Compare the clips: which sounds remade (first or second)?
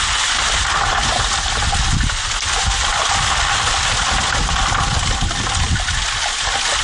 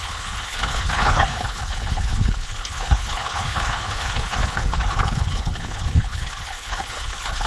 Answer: second